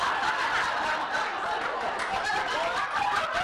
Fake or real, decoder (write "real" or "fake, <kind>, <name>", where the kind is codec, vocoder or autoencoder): real